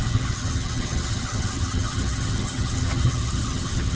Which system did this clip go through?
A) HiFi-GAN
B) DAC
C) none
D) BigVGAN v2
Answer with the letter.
A